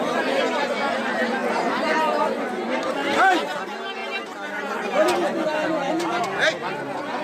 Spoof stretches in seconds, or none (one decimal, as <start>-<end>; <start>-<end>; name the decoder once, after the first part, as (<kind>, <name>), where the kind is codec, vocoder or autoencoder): none